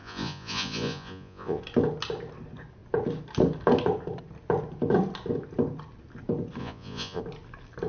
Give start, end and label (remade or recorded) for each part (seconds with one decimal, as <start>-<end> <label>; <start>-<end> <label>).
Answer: 0.0-1.6 remade; 1.6-6.6 recorded; 6.6-7.2 remade; 7.2-7.9 recorded